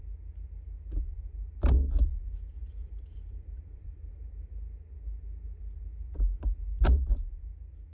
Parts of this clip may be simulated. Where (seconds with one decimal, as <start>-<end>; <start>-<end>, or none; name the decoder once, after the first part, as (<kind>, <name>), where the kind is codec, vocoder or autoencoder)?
2.6-4.1 (vocoder, BigVGAN v2)